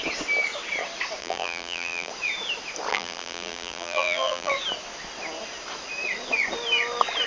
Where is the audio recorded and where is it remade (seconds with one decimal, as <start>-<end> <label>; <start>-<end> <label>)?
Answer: 0.0-1.2 recorded; 1.2-2.1 remade; 2.1-2.9 recorded; 2.9-4.5 remade; 4.5-7.3 recorded